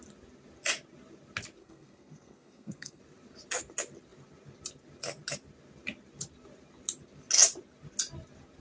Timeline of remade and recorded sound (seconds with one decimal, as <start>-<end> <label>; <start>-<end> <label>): 0.0-1.6 recorded; 1.6-3.0 remade; 3.0-8.6 recorded